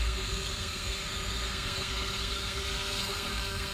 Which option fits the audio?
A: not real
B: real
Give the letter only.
A